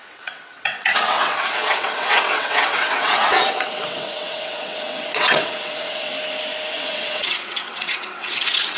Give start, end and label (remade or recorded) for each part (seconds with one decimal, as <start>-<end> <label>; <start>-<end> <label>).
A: 0.0-6.1 remade; 6.1-6.7 recorded; 6.7-8.8 remade

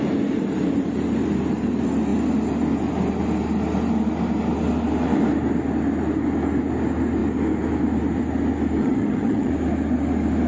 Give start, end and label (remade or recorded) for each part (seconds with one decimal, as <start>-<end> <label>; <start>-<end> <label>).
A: 0.0-8.8 recorded; 8.8-9.5 remade; 9.5-10.5 recorded

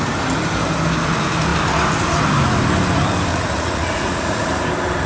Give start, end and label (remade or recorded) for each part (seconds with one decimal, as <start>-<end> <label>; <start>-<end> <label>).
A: 0.0-3.3 recorded; 3.3-4.5 remade; 4.5-5.1 recorded

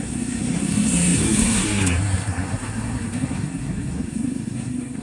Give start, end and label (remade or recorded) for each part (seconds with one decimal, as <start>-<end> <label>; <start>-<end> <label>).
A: 0.0-5.0 remade